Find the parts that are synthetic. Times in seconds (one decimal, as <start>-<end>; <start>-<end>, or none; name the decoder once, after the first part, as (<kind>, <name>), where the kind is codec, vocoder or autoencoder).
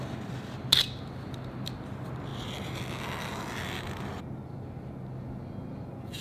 none